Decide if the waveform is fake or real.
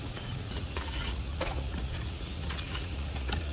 fake